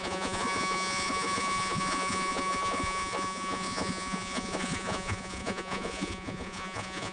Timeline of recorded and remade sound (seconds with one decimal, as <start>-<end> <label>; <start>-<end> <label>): 0.0-7.1 remade